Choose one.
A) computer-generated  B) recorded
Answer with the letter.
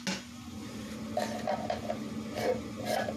B